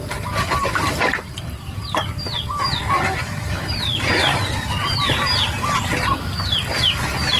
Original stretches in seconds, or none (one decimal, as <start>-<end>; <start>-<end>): 0.0-7.4